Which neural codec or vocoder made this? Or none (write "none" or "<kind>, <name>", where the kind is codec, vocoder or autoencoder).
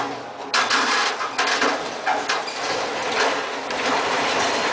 none